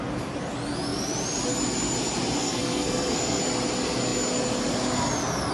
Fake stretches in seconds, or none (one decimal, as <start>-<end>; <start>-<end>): 2.4-3.4